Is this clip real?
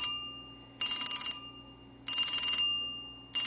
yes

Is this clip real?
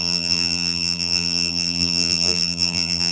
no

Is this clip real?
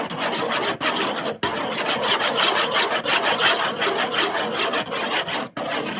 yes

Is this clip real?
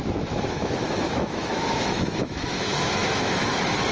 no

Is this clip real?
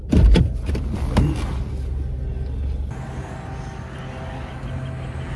yes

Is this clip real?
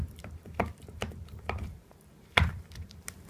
no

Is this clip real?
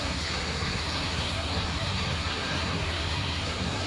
no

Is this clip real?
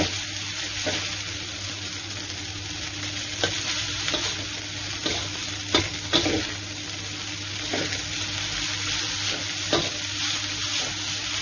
yes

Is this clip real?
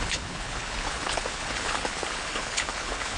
no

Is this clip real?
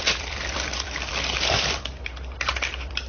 no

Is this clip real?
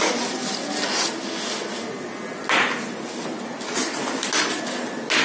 yes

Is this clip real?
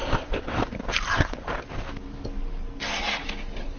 yes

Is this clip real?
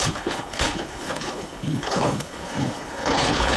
no